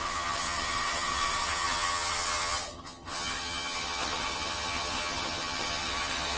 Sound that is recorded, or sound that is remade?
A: remade